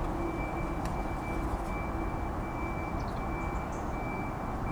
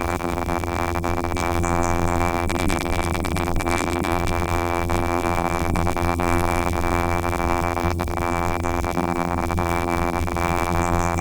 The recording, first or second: first